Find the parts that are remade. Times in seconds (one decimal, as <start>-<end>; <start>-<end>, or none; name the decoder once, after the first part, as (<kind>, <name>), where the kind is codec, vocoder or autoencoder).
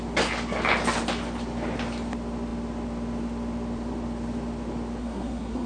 5.0-5.7 (codec, SNAC)